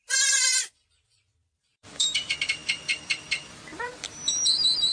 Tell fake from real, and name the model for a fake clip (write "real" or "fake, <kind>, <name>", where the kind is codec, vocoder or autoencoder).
fake, vocoder, BigVGAN v2